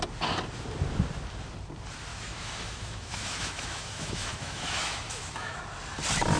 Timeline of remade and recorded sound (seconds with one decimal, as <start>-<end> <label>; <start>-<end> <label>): 0.0-2.1 recorded; 2.1-5.6 remade; 5.6-6.4 recorded